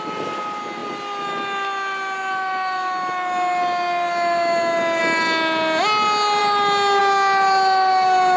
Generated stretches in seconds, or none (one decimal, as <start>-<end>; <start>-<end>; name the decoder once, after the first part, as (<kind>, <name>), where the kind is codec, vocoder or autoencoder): none